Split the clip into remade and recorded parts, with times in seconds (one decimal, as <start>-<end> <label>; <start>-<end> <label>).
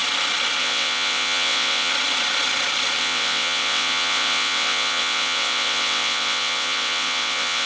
0.0-0.6 recorded; 0.6-1.9 remade; 1.9-3.0 recorded; 3.0-7.7 remade